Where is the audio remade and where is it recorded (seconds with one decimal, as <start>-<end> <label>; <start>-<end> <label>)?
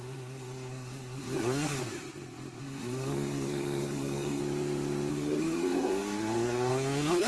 0.0-1.8 remade; 1.8-2.6 recorded; 2.6-4.4 remade; 4.4-5.1 recorded; 5.1-7.3 remade